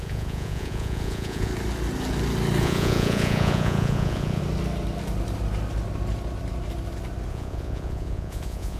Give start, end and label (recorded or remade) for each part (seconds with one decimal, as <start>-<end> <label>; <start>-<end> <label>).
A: 0.0-1.5 remade; 1.5-2.6 recorded; 2.6-4.4 remade; 4.4-7.3 recorded; 7.3-8.8 remade